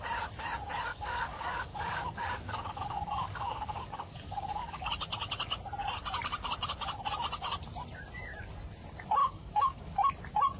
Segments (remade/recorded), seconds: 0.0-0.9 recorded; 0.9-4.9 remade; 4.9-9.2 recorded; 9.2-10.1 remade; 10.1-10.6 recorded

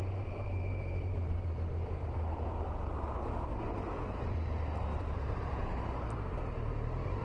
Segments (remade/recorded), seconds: 0.0-3.9 remade; 3.9-4.9 recorded; 4.9-6.7 remade; 6.7-7.2 recorded

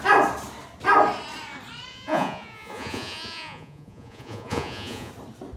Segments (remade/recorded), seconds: 0.0-1.9 recorded; 1.9-5.1 remade; 5.1-5.6 recorded

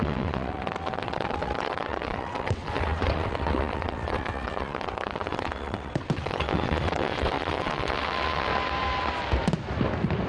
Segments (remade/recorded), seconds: 0.0-8.5 remade; 8.5-10.3 recorded

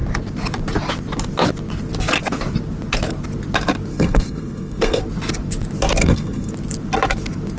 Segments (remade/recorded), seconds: 0.0-3.9 recorded; 3.9-5.0 remade; 5.0-6.0 recorded; 6.0-6.5 remade; 6.5-7.6 recorded

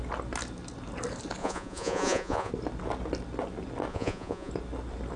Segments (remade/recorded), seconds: 0.0-1.4 recorded; 1.4-2.5 remade; 2.5-3.9 recorded; 3.9-4.5 remade; 4.5-5.2 recorded

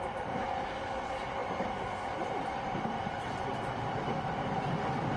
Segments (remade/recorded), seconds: 0.0-1.4 recorded; 1.4-4.5 remade; 4.5-5.2 recorded